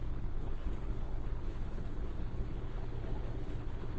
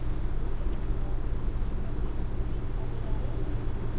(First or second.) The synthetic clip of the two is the first